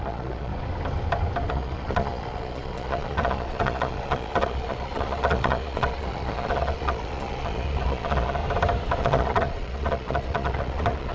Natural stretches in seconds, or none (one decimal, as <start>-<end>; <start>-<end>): 0.5-1.5; 8.4-9.0